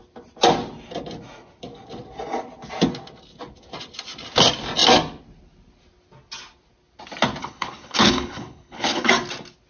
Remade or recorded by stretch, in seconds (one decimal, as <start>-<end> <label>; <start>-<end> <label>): 0.0-7.4 recorded; 7.4-9.1 remade; 9.1-9.7 recorded